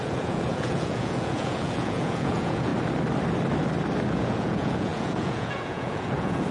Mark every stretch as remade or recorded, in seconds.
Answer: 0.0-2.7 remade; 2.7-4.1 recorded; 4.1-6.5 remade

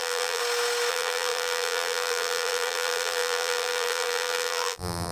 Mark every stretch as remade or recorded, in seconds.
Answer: 0.0-0.4 remade; 0.4-0.9 recorded; 0.9-5.1 remade

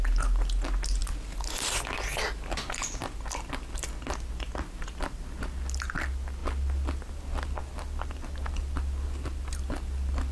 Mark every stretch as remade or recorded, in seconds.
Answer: 0.0-10.3 recorded

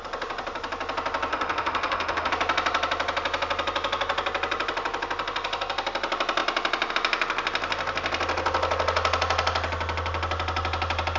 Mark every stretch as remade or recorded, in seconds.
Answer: 0.0-1.3 recorded; 1.3-2.3 remade; 2.3-11.2 recorded

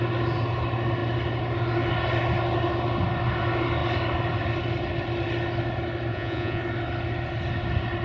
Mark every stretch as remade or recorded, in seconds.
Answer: 0.0-6.1 recorded; 6.1-6.6 remade; 6.6-8.0 recorded

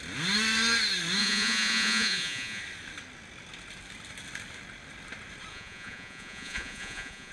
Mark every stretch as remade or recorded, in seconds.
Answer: 0.0-1.2 recorded; 1.2-2.6 remade; 2.6-5.5 recorded; 5.5-7.3 remade

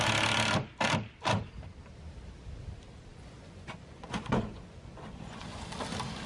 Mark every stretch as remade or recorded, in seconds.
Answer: 0.0-3.1 recorded; 3.1-5.7 remade; 5.7-6.3 recorded

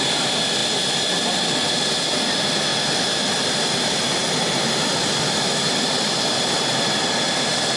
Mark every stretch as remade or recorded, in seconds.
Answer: 0.0-2.7 recorded; 2.7-3.6 remade; 3.6-7.8 recorded